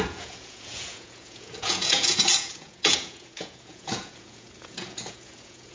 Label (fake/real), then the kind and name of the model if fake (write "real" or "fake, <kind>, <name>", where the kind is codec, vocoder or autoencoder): fake, vocoder, Vocos